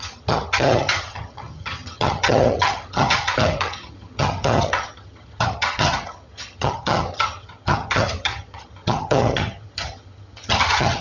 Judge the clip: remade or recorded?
remade